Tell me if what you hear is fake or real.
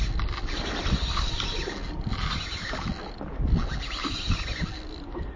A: real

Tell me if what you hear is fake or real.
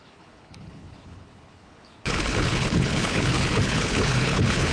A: fake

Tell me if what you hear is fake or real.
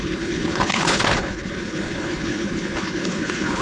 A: fake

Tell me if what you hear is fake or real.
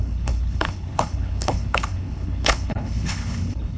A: fake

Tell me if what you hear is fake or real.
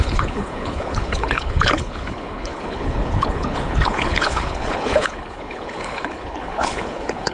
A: fake